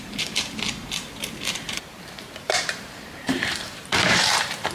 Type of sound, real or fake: fake